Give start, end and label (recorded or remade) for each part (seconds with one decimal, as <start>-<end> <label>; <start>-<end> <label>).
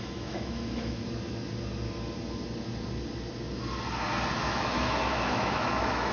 0.0-1.0 remade; 1.0-4.3 recorded; 4.3-6.1 remade